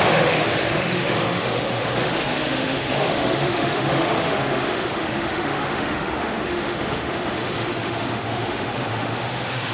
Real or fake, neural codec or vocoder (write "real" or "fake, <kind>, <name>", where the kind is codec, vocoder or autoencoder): fake, autoencoder, DAC-VAE